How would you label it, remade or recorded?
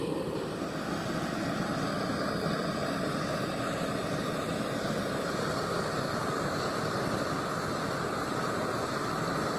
recorded